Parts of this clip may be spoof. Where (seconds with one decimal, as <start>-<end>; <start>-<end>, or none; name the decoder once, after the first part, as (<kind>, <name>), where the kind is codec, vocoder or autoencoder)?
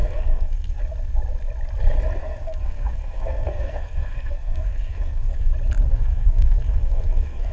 0.0-0.8 (codec, SNAC); 2.2-5.5; 5.9-7.5